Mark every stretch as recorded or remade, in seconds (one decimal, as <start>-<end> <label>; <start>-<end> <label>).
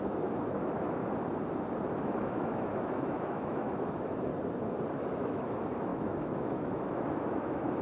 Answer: 0.0-1.0 remade; 1.0-2.0 recorded; 2.0-4.3 remade; 4.3-5.1 recorded; 5.1-7.8 remade